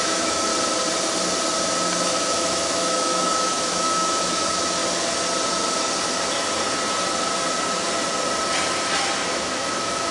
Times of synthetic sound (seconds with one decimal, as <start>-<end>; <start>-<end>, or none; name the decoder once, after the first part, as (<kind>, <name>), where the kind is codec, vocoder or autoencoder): 0.0-0.5 (autoencoder, DAC-VAE); 2.0-4.8; 9.3-10.1